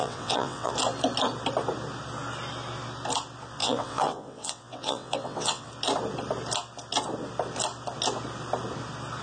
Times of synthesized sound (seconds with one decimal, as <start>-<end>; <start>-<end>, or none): 0.0-0.7; 3.6-5.7